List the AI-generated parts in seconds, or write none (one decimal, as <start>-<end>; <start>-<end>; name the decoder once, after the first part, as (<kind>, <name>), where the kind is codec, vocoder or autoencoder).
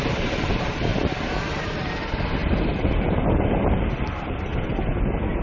0.0-0.9 (vocoder, BigVGAN v2); 1.4-4.5